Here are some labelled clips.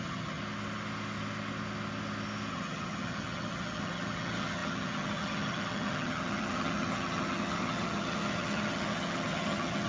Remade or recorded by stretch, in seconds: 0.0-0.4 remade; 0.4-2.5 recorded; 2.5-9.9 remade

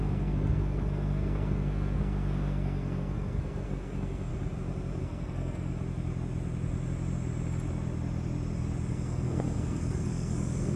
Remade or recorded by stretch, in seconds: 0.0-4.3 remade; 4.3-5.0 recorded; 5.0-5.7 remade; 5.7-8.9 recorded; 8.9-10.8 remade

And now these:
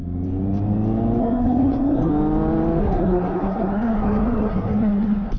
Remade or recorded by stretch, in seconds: 0.0-1.2 recorded; 1.2-2.1 remade; 2.1-2.8 recorded; 2.8-5.4 remade

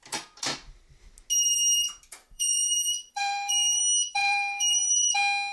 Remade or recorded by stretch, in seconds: 0.0-2.2 recorded; 2.2-3.8 remade; 3.8-4.2 recorded; 4.2-5.1 remade; 5.1-5.5 recorded